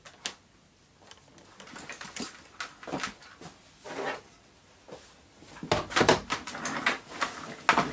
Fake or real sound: real